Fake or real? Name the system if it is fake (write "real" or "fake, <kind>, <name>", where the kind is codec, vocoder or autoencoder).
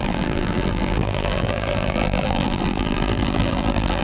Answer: fake, vocoder, BigVGAN v2